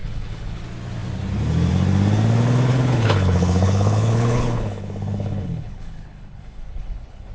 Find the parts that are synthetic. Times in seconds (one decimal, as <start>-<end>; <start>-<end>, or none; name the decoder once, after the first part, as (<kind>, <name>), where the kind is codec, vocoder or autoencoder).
0.0-0.6 (codec, HILCodec); 2.7-7.3